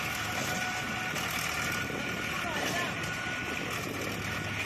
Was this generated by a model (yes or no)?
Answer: no